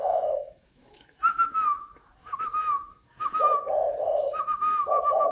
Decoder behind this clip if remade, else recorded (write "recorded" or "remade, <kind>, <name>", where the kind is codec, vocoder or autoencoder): remade, autoencoder, DAC-VAE